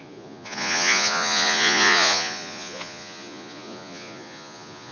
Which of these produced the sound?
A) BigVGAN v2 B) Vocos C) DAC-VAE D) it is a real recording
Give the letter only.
B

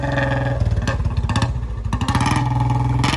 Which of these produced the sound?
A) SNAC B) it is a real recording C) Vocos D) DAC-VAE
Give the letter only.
B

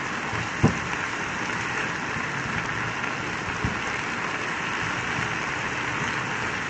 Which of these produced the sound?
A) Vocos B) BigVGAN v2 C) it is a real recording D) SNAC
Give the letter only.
C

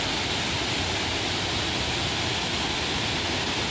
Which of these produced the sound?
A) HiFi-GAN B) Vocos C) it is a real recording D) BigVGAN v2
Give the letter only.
C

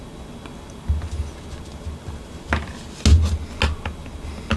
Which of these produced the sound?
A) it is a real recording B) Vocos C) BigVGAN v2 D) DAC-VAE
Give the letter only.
A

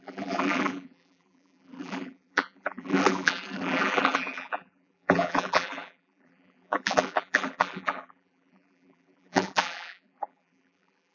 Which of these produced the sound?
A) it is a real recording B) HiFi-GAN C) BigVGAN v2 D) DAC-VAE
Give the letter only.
C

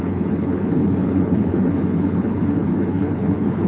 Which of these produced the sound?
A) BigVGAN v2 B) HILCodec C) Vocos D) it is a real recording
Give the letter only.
B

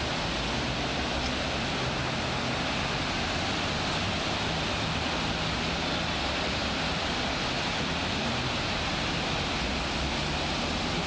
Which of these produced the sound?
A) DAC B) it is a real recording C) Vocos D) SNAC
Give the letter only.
B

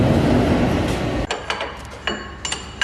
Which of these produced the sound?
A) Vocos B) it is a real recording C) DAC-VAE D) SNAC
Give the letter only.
B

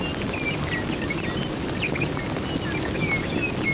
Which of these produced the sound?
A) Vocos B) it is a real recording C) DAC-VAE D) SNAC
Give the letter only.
B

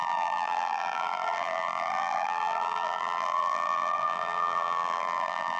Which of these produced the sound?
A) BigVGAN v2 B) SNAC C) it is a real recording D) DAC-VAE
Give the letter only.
A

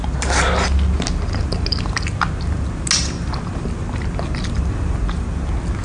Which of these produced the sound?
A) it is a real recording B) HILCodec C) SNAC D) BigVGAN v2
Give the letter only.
A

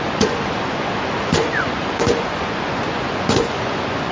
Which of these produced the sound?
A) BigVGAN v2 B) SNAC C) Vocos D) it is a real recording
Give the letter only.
C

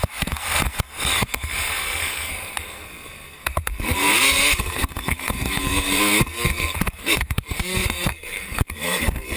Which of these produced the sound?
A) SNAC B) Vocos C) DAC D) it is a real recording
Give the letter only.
A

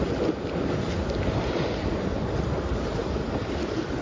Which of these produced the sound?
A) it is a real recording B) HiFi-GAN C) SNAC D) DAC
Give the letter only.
A